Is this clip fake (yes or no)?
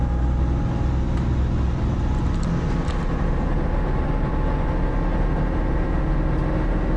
no